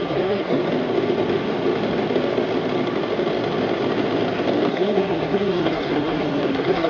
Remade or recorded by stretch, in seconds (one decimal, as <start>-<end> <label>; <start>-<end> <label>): 0.0-0.6 remade; 0.6-4.7 recorded; 4.7-6.9 remade